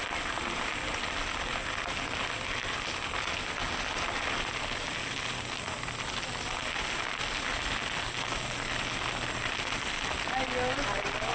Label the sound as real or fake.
real